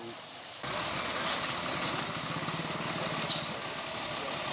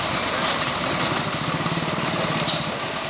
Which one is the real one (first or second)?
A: first